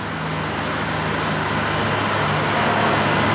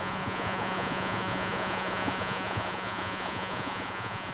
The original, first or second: first